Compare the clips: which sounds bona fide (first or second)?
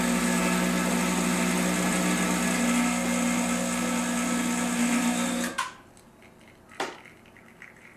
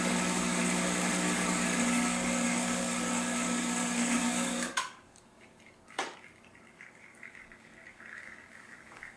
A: first